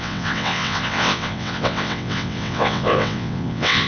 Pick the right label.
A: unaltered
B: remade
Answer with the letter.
B